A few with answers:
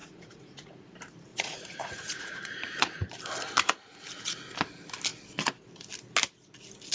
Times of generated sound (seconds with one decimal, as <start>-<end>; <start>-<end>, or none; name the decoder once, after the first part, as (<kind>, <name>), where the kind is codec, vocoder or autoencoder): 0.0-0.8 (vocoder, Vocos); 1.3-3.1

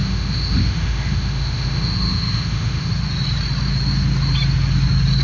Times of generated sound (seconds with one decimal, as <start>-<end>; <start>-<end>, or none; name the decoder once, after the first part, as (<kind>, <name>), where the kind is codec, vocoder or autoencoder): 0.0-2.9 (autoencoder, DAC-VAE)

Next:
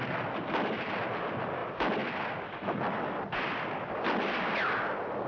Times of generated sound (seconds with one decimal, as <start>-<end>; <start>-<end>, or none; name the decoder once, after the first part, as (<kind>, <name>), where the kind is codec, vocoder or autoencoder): none

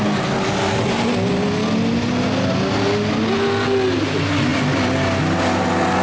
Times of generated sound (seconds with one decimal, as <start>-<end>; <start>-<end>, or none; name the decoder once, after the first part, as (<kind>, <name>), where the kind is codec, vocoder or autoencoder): none

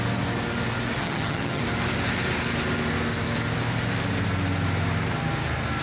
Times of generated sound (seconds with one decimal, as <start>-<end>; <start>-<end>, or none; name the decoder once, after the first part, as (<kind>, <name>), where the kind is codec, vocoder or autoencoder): 1.0-1.6 (vocoder, HiFi-GAN)